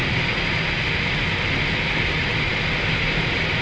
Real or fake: real